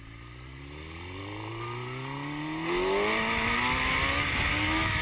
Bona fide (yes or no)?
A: yes